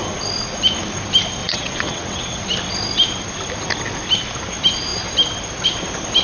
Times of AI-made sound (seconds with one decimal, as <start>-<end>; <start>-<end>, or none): 1.4-2.4